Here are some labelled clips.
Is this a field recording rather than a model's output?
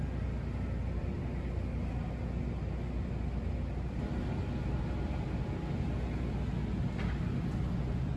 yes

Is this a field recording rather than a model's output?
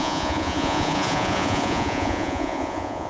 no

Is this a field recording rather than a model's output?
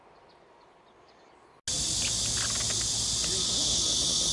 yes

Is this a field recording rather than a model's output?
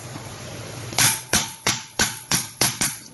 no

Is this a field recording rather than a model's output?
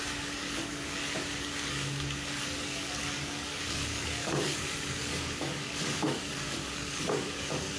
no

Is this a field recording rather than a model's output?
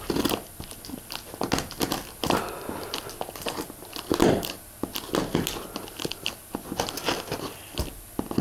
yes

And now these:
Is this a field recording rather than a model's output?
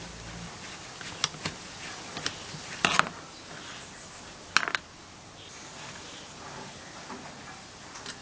yes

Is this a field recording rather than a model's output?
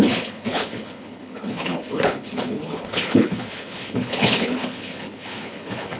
no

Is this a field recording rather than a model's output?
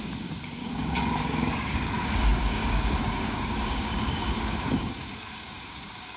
no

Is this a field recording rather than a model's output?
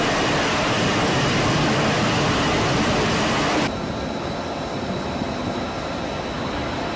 yes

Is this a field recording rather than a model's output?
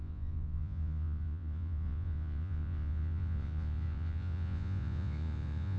no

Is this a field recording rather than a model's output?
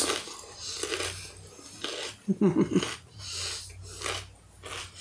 yes